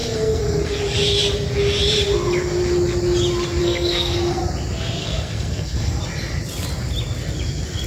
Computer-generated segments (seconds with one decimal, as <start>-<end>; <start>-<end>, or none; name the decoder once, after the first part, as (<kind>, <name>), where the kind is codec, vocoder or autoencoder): 0.0-0.8 (codec, SNAC); 3.6-4.4; 5.0-6.0